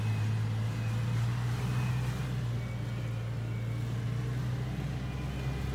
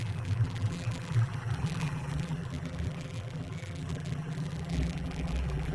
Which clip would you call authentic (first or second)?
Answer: first